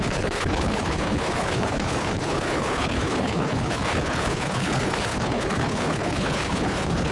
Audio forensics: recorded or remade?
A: remade